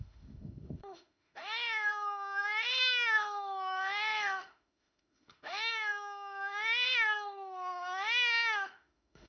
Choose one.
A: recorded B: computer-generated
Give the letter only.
B